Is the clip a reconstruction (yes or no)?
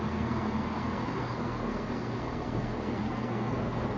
yes